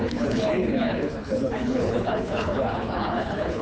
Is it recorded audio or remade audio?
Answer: remade